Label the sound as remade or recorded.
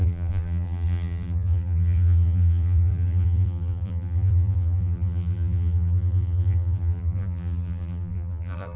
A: remade